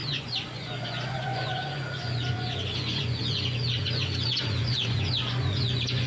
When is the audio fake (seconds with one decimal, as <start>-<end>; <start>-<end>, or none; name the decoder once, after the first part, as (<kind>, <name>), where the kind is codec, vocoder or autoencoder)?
0.0-6.1 (vocoder, Vocos)